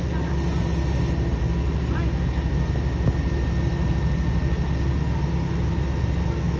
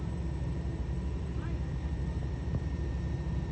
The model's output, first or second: second